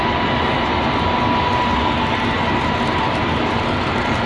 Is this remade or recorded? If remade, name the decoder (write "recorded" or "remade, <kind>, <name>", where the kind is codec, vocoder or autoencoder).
recorded